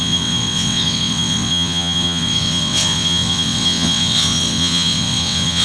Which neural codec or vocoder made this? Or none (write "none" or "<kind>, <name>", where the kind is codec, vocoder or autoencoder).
vocoder, WaveNeXt